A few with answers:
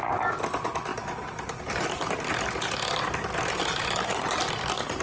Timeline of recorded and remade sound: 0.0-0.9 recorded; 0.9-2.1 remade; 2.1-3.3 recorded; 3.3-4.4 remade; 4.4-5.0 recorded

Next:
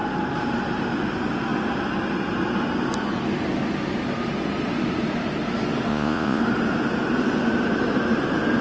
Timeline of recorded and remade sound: 0.0-5.9 recorded; 5.9-6.4 remade; 6.4-8.6 recorded

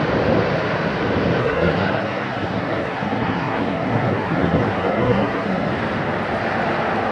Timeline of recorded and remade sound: 0.0-1.4 recorded; 1.4-5.7 remade; 5.7-7.1 recorded

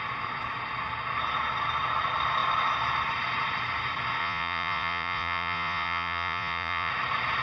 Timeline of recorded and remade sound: 0.0-4.2 recorded; 4.2-6.9 remade; 6.9-7.4 recorded

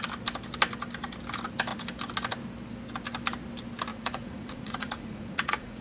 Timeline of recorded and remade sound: 0.0-3.9 recorded; 3.9-5.8 remade

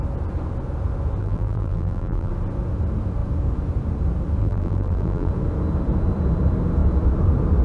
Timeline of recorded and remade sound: 0.0-1.2 recorded; 1.2-2.3 remade; 2.3-4.4 recorded; 4.4-5.3 remade; 5.3-7.6 recorded